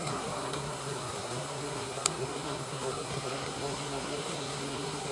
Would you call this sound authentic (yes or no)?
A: no